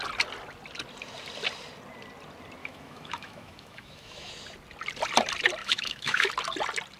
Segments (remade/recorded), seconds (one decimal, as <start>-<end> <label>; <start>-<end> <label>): 0.0-2.6 recorded; 2.6-4.3 remade; 4.3-5.6 recorded; 5.6-6.3 remade; 6.3-7.0 recorded